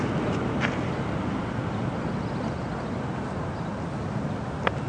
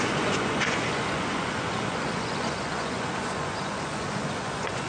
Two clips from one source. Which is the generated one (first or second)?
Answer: second